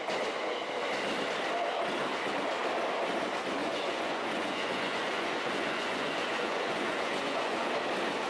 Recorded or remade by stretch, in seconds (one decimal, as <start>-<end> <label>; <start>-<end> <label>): 0.0-3.6 recorded; 3.6-7.7 remade; 7.7-8.3 recorded